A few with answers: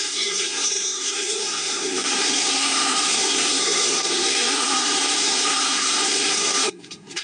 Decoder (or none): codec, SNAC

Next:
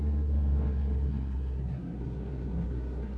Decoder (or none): codec, SNAC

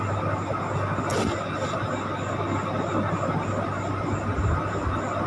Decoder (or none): none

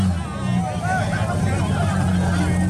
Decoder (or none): none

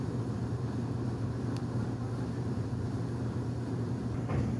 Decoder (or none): none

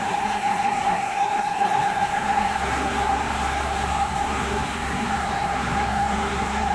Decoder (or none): codec, SNAC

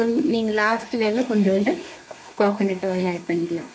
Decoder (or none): codec, SNAC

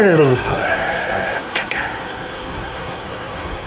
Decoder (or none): codec, SNAC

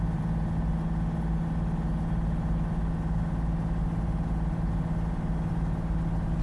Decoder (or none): none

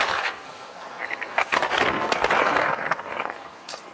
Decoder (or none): codec, SNAC